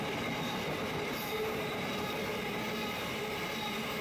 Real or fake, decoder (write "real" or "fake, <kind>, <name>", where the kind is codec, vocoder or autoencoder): real